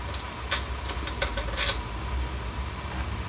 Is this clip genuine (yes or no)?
yes